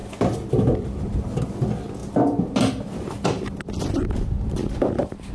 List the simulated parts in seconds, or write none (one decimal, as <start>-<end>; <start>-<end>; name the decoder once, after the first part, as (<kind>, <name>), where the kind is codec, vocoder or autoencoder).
0.0-0.5 (vocoder, BigVGAN v2); 2.0-5.3